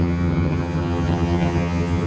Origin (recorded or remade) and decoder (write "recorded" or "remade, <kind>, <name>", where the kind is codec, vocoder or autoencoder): remade, vocoder, HiFi-GAN